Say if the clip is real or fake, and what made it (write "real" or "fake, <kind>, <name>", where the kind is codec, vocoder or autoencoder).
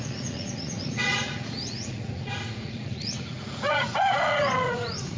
fake, vocoder, Vocos